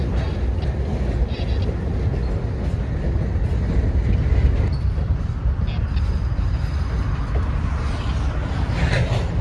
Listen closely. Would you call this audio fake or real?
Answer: real